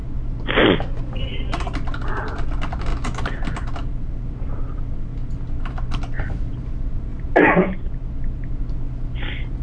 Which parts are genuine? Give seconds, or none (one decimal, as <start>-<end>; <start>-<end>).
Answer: 0.0-9.6

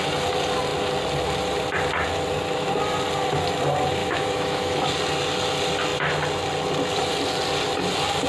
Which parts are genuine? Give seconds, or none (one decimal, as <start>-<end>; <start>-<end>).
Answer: 0.0-4.0; 4.9-8.3